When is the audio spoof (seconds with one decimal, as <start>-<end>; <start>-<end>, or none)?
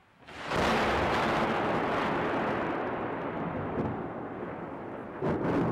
3.9-4.4